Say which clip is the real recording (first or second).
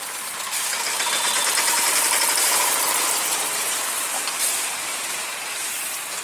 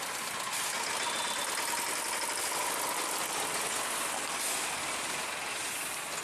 second